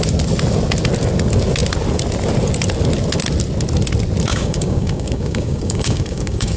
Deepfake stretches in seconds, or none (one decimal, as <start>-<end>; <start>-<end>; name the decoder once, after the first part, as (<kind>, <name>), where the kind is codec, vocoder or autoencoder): 4.3-6.6 (codec, DAC)